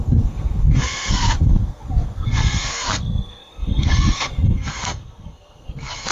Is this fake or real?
fake